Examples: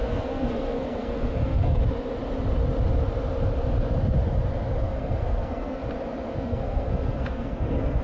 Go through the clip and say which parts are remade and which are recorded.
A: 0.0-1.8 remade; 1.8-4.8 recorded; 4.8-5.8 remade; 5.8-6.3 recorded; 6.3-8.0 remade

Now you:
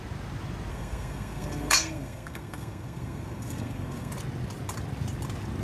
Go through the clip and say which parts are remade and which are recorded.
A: 0.0-0.7 recorded; 0.7-4.1 remade; 4.1-5.6 recorded

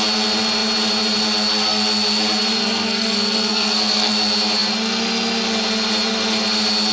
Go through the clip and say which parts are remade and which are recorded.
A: 0.0-2.6 recorded; 2.6-4.1 remade; 4.1-6.9 recorded